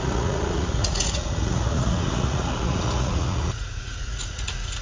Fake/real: fake